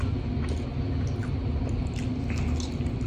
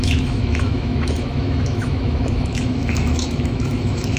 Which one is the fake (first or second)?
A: second